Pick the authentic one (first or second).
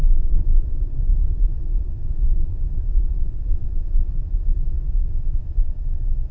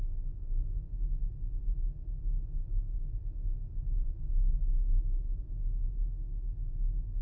second